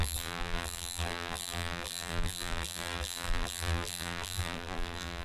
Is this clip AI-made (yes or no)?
yes